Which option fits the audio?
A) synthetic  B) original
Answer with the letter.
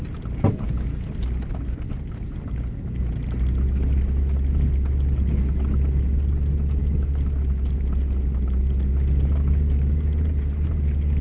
B